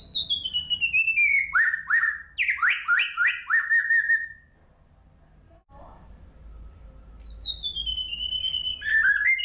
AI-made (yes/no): no